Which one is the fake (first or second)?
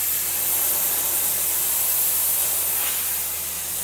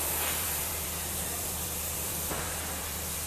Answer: second